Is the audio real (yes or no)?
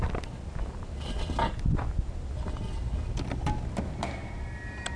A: yes